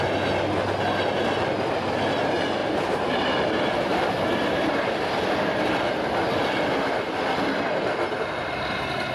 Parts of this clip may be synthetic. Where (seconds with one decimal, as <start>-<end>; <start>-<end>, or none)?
2.6-5.2